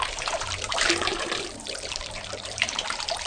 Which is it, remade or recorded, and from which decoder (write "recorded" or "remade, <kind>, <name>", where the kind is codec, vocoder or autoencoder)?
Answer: remade, vocoder, BigVGAN v2